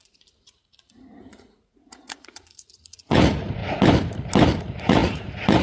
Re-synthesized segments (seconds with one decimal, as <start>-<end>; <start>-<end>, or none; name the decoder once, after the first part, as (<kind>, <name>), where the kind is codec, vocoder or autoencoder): 0.0-3.6 (vocoder, Vocos); 4.6-5.6